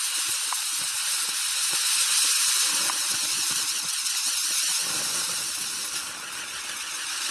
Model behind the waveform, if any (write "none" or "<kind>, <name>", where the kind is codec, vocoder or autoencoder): none